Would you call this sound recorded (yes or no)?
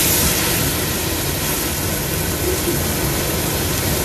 yes